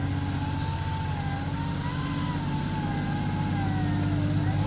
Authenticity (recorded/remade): recorded